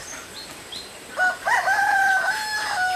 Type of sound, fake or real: fake